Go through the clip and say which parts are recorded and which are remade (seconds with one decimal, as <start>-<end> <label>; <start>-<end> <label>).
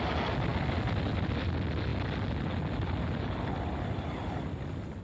0.0-5.0 recorded